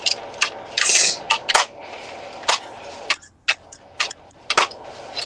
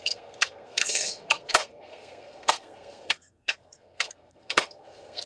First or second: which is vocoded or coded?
second